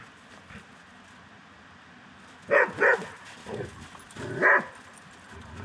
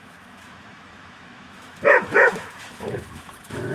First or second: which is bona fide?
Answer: first